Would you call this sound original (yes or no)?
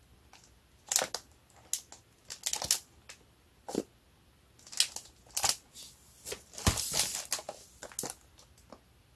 yes